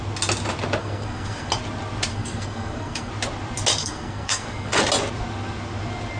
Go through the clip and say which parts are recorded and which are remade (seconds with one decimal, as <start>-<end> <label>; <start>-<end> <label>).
0.0-0.8 recorded; 0.8-1.5 remade; 1.5-2.1 recorded; 2.1-3.1 remade; 3.1-3.8 recorded; 3.8-4.8 remade; 4.8-6.2 recorded